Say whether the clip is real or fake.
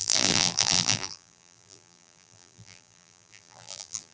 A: fake